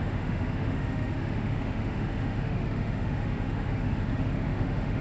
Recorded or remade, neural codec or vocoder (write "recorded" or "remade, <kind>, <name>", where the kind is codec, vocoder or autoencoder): remade, autoencoder, DAC-VAE